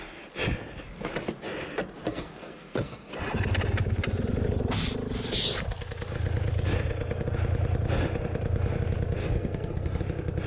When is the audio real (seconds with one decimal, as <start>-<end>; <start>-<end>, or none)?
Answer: 0.0-2.1; 3.1-9.2; 10.0-10.5